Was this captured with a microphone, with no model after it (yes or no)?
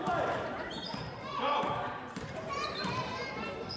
no